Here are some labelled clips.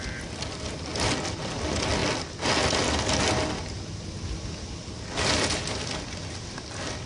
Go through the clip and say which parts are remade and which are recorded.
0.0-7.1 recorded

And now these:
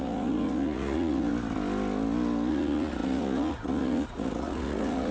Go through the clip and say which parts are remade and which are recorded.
0.0-1.3 remade; 1.3-2.5 recorded; 2.5-5.1 remade

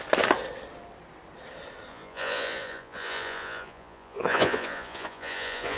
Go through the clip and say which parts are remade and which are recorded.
0.0-1.9 recorded; 1.9-5.8 remade

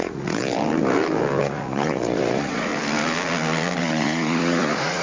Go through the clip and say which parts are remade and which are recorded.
0.0-0.4 remade; 0.4-1.4 recorded; 1.4-2.7 remade; 2.7-3.8 recorded; 3.8-5.0 remade

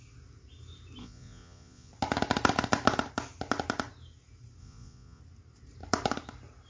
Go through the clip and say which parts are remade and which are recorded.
0.0-1.0 recorded; 1.0-1.9 remade; 1.9-4.6 recorded; 4.6-5.2 remade; 5.2-6.7 recorded

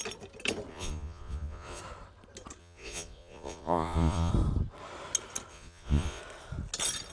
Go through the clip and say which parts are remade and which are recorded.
0.0-0.7 recorded; 0.7-1.8 remade; 1.8-2.6 recorded; 2.6-4.3 remade; 4.3-5.5 recorded; 5.5-6.2 remade; 6.2-7.1 recorded

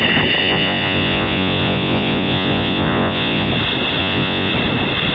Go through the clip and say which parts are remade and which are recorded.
0.0-0.4 recorded; 0.4-3.5 remade; 3.5-4.0 recorded; 4.0-4.5 remade; 4.5-5.1 recorded

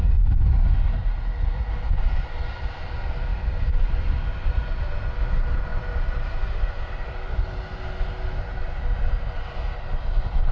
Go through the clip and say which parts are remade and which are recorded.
0.0-1.0 recorded; 1.0-1.7 remade; 1.7-10.5 recorded